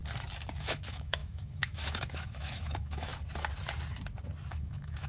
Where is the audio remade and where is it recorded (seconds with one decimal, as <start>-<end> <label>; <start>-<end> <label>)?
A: 0.0-0.6 recorded; 0.6-3.1 remade; 3.1-4.5 recorded; 4.5-5.1 remade